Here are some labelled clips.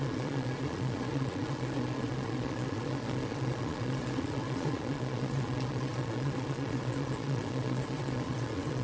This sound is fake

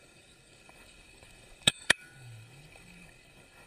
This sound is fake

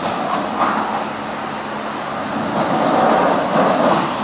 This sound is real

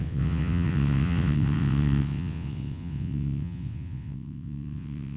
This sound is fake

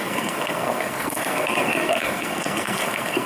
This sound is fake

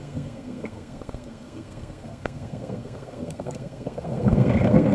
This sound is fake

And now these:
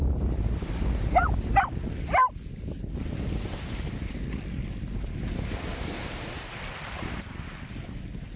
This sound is real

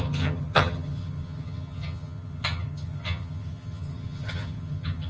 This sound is fake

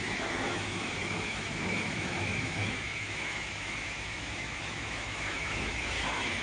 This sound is fake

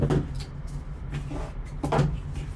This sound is real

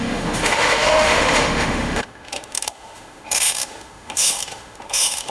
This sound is fake